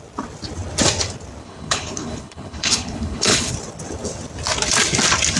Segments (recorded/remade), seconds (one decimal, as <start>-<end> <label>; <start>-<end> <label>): 0.0-1.4 recorded; 1.4-3.5 remade; 3.5-5.4 recorded